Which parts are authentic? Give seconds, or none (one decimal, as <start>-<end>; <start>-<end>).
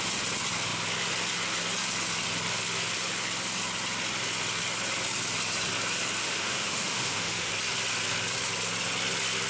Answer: 0.0-6.2; 7.5-9.5